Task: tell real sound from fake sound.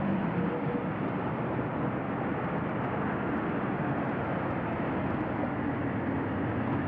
real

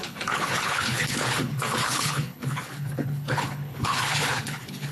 fake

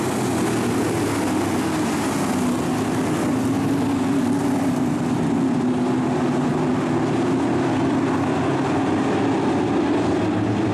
real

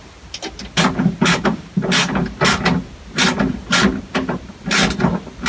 real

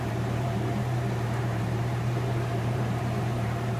fake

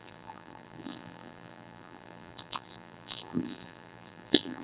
fake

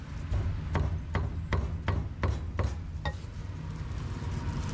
real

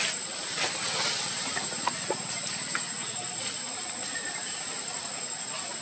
real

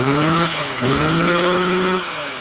fake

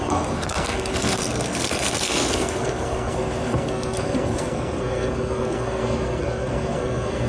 fake